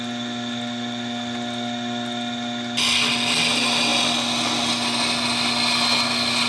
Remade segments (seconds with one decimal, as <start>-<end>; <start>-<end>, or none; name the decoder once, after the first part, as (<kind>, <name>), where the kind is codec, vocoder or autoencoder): none